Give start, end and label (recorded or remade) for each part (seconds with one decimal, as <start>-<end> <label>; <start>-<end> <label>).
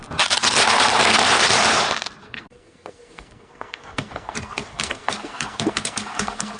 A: 0.0-2.2 recorded; 2.2-6.6 remade